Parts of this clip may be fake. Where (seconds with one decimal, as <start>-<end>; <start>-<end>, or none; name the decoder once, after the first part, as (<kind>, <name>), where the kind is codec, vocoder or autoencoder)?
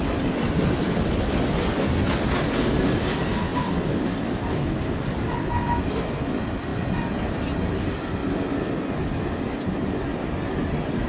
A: none